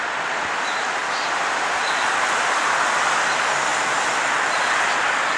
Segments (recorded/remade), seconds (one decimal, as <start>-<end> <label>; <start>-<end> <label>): 0.0-5.4 recorded